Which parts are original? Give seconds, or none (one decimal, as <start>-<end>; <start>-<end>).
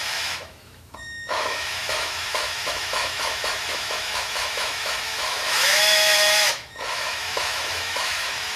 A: none